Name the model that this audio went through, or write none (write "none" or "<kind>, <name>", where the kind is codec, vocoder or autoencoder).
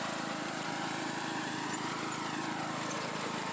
vocoder, BigVGAN v2